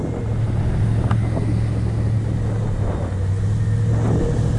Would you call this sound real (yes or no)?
yes